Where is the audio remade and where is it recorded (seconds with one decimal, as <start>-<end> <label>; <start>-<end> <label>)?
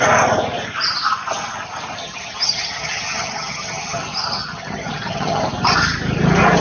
0.0-2.0 recorded; 2.0-4.0 remade; 4.0-4.4 recorded; 4.4-5.4 remade; 5.4-6.6 recorded